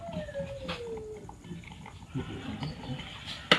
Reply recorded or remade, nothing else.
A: recorded